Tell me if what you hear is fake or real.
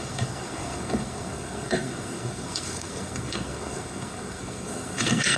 fake